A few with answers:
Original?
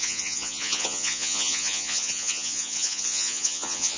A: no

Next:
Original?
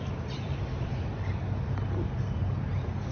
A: yes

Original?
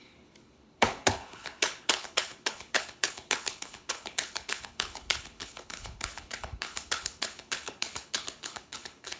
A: no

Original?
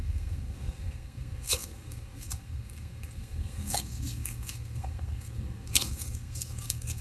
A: no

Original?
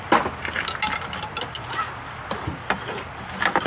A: yes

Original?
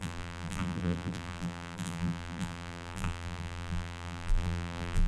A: no